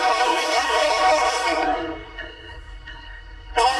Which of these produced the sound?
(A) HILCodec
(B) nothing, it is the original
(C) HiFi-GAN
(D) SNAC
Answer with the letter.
D